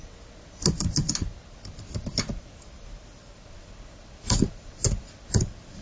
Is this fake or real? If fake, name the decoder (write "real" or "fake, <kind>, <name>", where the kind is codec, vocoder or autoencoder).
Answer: real